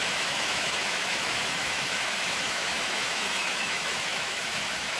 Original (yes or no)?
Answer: no